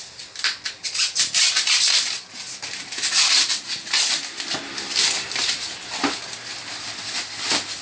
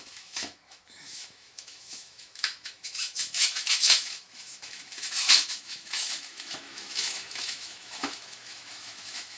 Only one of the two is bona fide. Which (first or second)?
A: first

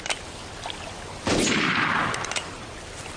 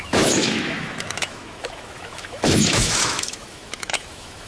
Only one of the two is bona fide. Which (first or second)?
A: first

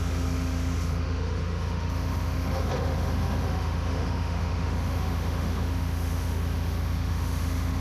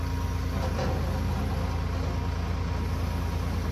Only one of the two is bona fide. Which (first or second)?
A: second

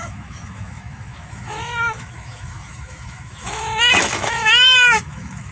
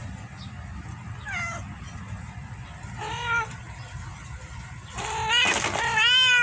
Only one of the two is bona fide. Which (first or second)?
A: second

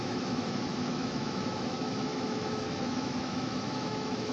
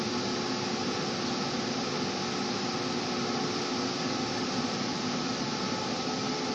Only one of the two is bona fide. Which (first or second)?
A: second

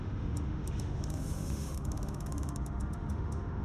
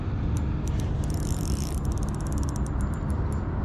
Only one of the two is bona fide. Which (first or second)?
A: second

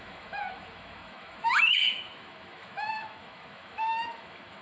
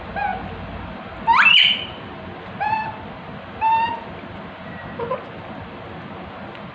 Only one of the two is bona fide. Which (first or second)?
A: second